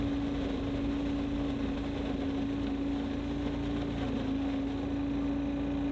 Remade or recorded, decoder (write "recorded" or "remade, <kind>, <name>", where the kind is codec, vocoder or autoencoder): recorded